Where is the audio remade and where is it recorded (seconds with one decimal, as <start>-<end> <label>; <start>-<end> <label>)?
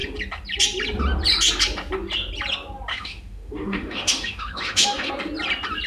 0.0-2.9 recorded; 2.9-5.1 remade; 5.1-5.9 recorded